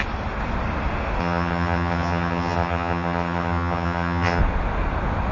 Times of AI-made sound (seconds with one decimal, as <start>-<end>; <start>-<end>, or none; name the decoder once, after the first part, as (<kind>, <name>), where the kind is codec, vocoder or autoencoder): 1.2-4.4 (vocoder, HiFi-GAN)